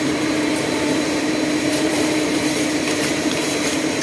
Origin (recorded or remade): remade